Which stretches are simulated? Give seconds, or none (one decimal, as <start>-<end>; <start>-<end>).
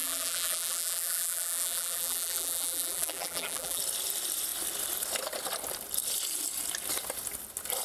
0.0-3.8